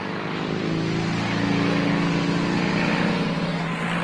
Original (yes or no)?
yes